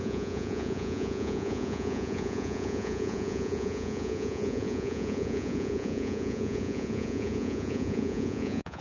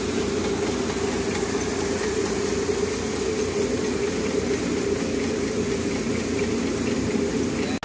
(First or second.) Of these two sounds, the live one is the second